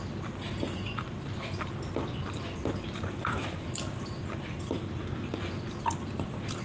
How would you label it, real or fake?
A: real